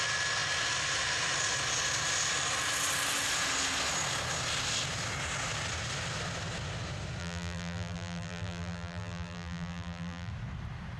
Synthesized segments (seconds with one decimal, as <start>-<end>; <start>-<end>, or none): 7.2-10.3